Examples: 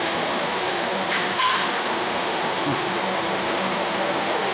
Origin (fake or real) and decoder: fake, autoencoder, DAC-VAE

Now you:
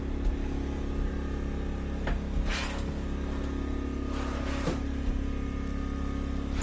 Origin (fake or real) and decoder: real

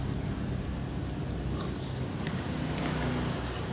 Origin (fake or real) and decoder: real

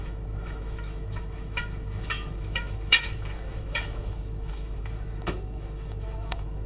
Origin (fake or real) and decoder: fake, autoencoder, DAC-VAE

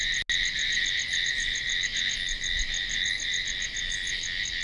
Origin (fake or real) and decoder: real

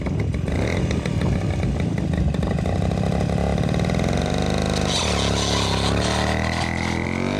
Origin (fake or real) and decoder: real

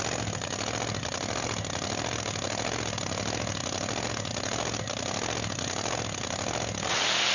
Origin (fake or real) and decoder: real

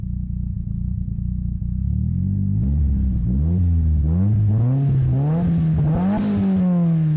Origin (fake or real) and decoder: real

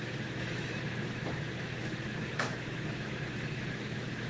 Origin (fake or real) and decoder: fake, autoencoder, DAC-VAE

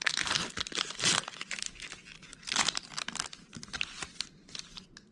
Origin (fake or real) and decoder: real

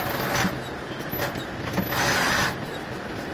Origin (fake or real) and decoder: real